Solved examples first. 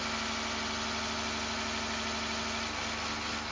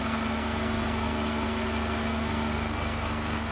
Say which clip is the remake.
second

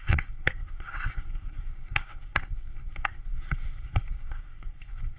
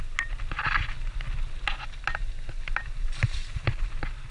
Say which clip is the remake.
first